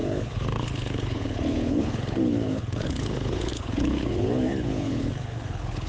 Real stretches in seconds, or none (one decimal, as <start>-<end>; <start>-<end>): none